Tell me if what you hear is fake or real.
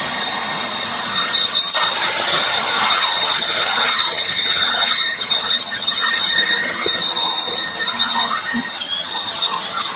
fake